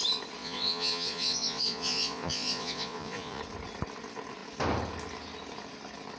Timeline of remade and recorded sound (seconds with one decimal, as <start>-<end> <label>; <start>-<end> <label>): 0.0-0.4 recorded; 0.4-3.4 remade; 3.4-6.2 recorded